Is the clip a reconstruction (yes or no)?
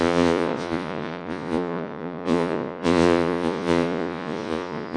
yes